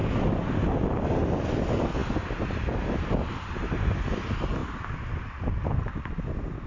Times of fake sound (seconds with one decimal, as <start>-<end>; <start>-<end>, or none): none

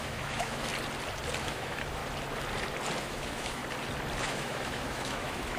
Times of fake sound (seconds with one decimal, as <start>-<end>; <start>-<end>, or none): 0.0-0.7; 1.4-2.0; 3.0-3.6; 4.2-5.6

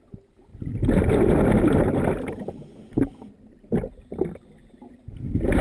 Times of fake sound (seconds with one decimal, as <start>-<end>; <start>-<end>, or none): none

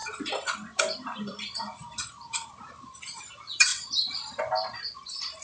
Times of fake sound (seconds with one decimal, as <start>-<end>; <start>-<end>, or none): 3.2-3.7; 4.4-5.4

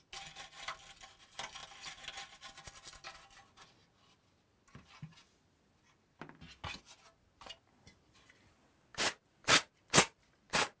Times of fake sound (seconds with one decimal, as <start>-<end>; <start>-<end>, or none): none